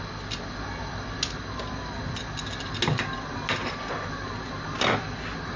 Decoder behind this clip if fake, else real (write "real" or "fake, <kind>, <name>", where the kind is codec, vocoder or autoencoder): real